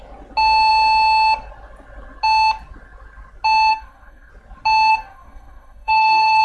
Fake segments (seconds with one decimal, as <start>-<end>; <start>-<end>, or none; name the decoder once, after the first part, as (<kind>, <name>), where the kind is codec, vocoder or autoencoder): 3.7-4.3 (codec, DAC); 4.9-6.4